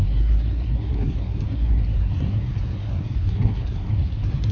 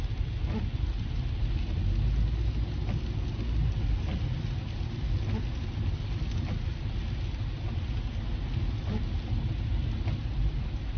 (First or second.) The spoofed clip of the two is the first